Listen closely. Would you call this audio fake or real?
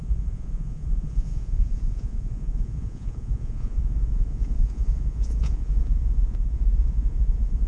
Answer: fake